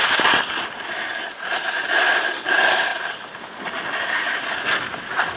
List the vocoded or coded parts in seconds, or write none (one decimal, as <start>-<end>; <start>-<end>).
none